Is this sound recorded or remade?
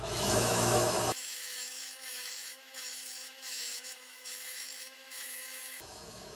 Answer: remade